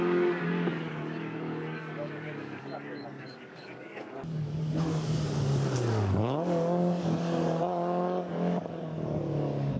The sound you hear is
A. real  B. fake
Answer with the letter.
B